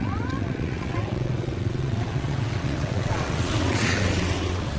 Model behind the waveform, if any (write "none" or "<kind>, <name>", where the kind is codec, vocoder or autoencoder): vocoder, WaveNeXt